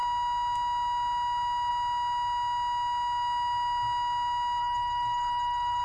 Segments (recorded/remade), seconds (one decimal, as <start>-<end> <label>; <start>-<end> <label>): 0.0-4.6 recorded; 4.6-5.8 remade